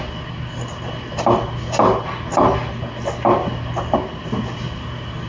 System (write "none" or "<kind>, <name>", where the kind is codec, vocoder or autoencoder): none